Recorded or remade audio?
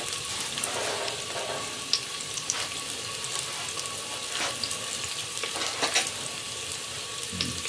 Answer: recorded